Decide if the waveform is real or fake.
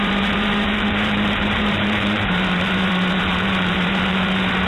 fake